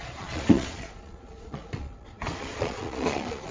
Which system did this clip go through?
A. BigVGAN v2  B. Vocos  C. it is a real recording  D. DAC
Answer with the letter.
B